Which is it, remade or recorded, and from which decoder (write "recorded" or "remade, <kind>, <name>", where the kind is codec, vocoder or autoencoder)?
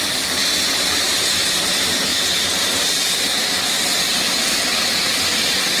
recorded